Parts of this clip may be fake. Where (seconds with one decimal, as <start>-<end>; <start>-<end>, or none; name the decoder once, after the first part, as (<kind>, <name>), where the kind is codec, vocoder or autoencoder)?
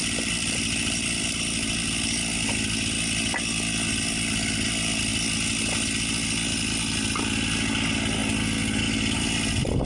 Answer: 0.0-1.2 (vocoder, BigVGAN v2)